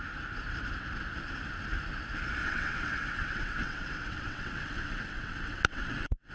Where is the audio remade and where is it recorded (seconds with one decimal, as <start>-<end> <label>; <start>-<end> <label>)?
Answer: 0.0-2.4 recorded; 2.4-6.3 remade